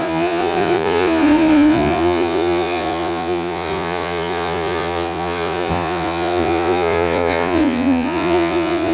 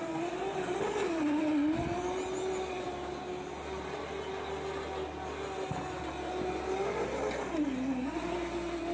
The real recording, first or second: second